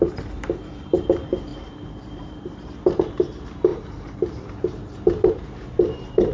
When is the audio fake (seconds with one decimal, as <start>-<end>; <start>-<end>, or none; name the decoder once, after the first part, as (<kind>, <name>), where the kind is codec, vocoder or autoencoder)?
0.0-6.3 (vocoder, BigVGAN v2)